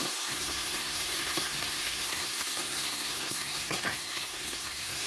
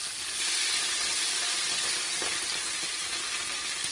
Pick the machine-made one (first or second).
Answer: first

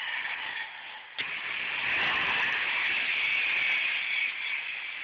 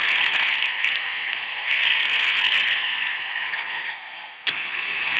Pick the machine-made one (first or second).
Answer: second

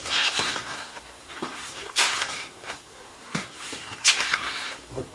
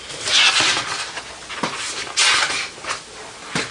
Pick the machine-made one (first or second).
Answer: first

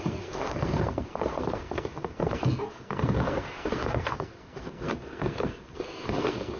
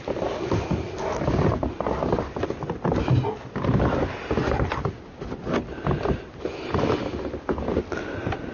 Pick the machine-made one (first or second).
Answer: first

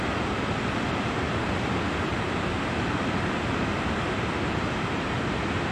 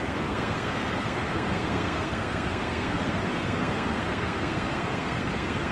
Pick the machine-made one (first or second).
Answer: second